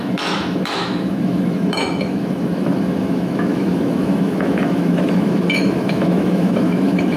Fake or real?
fake